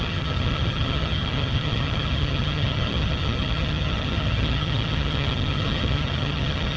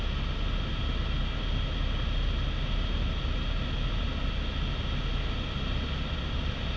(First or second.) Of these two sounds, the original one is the second